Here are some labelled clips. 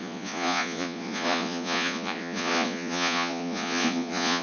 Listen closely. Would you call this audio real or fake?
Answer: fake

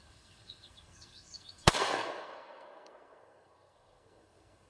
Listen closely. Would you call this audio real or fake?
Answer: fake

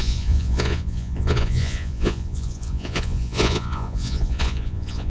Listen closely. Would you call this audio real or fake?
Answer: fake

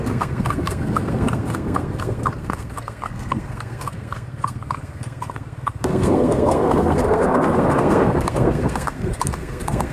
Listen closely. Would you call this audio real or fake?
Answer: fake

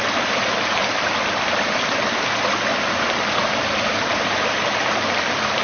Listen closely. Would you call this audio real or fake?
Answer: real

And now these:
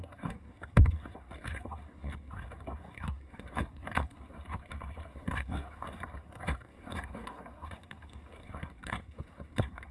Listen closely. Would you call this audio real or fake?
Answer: fake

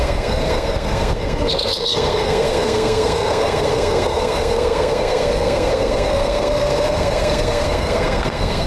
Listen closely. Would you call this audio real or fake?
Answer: fake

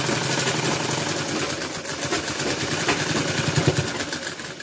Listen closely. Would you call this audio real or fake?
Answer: real